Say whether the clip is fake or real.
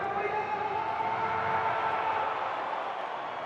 real